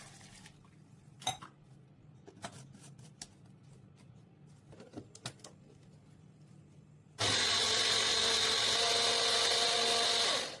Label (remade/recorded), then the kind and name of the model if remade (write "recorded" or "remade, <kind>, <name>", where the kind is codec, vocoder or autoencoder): recorded